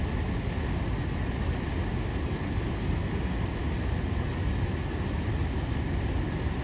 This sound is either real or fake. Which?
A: real